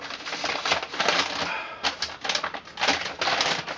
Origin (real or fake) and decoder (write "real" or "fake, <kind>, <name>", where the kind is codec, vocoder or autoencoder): real